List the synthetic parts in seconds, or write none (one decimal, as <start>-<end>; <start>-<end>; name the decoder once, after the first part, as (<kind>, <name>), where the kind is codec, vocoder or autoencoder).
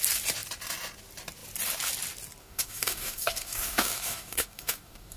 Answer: 2.4-5.2 (codec, DAC)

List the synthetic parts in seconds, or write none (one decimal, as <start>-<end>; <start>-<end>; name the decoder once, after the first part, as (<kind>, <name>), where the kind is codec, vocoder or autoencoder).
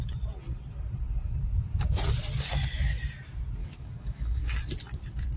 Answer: 3.6-4.4 (codec, DAC)